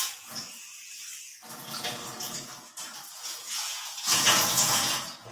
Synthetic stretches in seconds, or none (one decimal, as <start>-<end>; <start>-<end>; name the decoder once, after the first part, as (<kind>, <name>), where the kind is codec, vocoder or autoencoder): 0.0-1.3 (vocoder, Vocos); 3.1-5.3

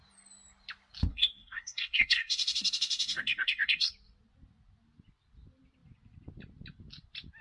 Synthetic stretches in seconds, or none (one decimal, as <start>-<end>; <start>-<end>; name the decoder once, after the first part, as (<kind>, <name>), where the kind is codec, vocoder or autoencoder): 1.1-3.9 (codec, SNAC)